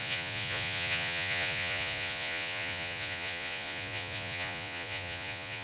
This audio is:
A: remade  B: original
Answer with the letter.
A